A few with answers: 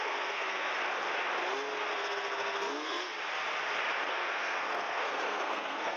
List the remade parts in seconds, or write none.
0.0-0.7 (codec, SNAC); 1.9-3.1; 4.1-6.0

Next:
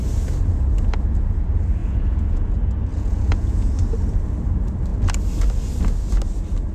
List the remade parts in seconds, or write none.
1.8-2.5 (vocoder, Vocos); 2.9-3.7

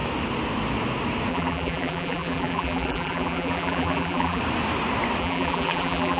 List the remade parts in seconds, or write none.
1.3-4.4 (vocoder, BigVGAN v2); 5.2-6.2